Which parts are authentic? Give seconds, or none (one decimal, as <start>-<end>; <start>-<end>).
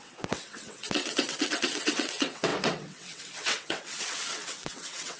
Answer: none